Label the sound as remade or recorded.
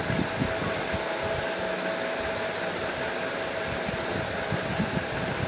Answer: recorded